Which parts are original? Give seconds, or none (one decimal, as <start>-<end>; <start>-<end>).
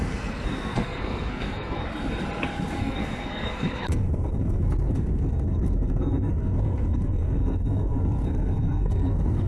1.8-2.8